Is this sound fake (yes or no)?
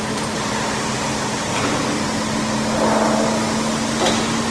no